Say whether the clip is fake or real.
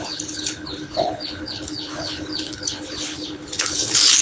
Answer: fake